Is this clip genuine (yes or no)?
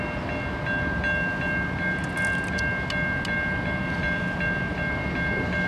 yes